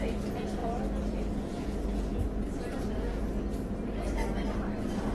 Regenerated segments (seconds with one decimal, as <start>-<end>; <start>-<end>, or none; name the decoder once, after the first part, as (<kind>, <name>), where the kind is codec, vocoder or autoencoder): 0.6-1.5 (vocoder, BigVGAN v2)